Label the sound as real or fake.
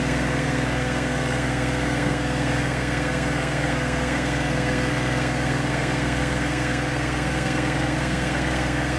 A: fake